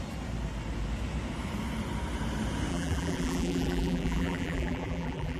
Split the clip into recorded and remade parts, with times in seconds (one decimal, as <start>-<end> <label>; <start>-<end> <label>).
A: 0.0-2.7 recorded; 2.7-5.4 remade